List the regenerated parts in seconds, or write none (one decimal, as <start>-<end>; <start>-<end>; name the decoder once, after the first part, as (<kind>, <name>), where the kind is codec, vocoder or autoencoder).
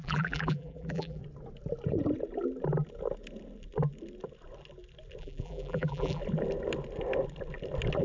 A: 0.0-1.2 (vocoder, BigVGAN v2); 5.2-6.2